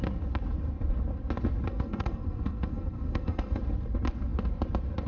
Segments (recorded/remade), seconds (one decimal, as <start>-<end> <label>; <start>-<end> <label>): 0.0-1.7 recorded; 1.7-3.6 remade; 3.6-5.1 recorded